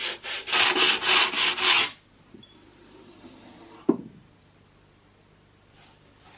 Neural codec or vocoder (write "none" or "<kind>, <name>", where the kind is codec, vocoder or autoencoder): none